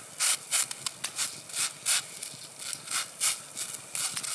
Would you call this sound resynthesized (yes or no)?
no